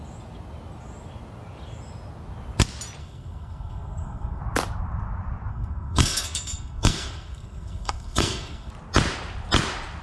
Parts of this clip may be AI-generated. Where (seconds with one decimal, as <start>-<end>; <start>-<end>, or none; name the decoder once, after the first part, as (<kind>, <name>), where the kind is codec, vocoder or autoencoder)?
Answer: 3.0-4.4 (codec, SNAC); 5.5-8.7